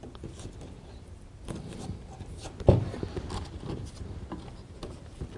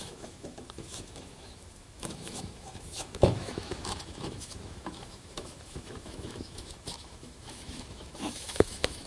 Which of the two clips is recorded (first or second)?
first